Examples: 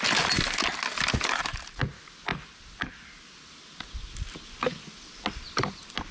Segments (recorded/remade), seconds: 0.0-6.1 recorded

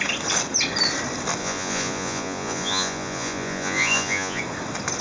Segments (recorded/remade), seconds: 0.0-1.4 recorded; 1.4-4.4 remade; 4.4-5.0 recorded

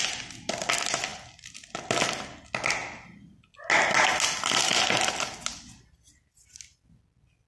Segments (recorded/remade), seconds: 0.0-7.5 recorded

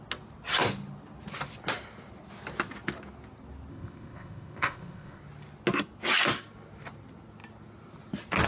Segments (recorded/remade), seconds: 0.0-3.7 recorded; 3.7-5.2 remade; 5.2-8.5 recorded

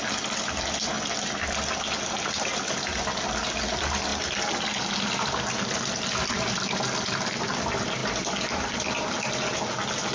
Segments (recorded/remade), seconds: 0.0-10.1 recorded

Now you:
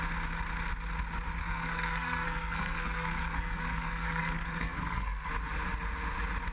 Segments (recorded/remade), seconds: 0.0-1.4 recorded; 1.4-5.3 remade; 5.3-6.5 recorded